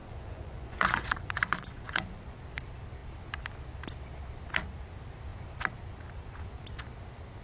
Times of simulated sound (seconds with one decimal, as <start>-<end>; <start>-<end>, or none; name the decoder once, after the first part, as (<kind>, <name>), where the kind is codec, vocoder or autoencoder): 0.0-2.4 (vocoder, Vocos)